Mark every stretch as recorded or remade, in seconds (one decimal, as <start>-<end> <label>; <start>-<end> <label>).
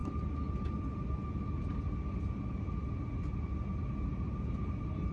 0.0-5.1 recorded